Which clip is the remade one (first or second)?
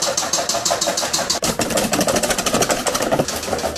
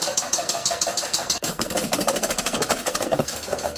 second